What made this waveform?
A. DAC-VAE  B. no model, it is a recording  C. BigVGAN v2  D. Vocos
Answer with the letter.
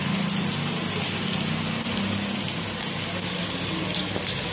B